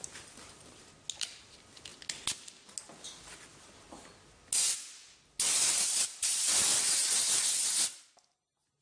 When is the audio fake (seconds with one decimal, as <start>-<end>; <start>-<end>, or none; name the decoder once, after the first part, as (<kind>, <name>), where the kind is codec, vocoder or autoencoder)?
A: none